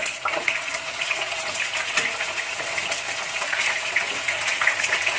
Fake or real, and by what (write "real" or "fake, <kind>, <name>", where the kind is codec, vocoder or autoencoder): fake, vocoder, Vocos